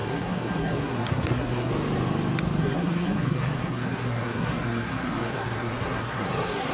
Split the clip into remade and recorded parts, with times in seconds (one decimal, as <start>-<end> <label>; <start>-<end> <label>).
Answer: 0.0-1.7 remade; 1.7-2.6 recorded; 2.6-6.7 remade